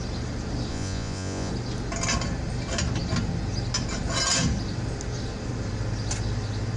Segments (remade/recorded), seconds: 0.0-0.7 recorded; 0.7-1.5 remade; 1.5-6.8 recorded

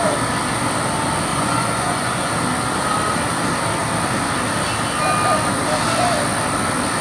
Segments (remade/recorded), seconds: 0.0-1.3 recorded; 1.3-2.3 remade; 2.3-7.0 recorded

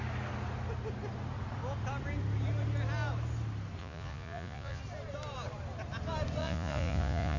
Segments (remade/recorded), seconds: 0.0-3.8 recorded; 3.8-4.8 remade; 4.8-6.4 recorded; 6.4-7.4 remade

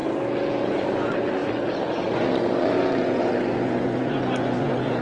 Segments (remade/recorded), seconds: 0.0-0.6 recorded; 0.6-5.0 remade